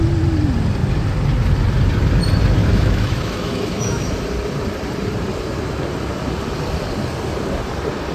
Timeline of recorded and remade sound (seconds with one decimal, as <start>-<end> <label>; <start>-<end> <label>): 0.0-2.6 recorded; 2.6-4.1 remade; 4.1-8.1 recorded